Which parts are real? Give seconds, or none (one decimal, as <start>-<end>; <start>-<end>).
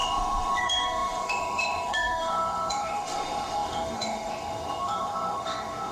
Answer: none